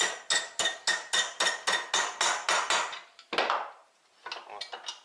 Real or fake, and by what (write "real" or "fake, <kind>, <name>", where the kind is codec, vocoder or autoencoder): real